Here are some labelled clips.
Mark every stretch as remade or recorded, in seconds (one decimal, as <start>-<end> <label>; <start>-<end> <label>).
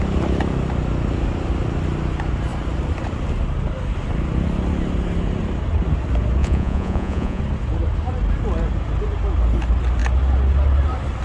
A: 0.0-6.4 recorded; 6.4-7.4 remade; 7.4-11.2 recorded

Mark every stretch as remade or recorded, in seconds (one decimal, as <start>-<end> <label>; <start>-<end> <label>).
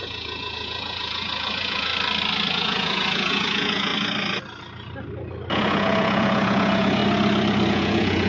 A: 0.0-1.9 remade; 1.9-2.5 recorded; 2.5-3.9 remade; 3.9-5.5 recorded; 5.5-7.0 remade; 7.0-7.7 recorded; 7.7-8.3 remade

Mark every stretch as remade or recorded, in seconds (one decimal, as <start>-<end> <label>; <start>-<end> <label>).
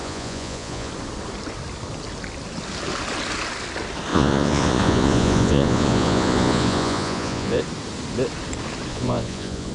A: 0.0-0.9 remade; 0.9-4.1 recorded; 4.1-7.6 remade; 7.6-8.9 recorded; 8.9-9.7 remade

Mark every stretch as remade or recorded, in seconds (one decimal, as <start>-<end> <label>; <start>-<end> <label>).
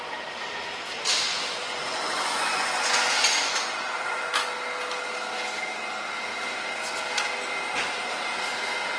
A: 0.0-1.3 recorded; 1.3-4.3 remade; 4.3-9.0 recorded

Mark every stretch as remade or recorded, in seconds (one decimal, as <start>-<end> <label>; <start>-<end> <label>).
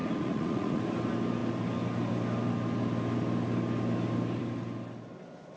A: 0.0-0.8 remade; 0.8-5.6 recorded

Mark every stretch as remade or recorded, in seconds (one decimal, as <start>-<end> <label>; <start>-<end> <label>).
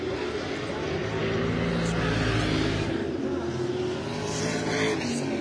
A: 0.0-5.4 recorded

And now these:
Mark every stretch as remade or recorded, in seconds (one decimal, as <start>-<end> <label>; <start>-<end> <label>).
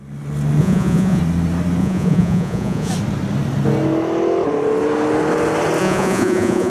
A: 0.0-0.6 recorded; 0.6-1.2 remade; 1.2-1.8 recorded; 1.8-2.9 remade; 2.9-5.8 recorded; 5.8-6.7 remade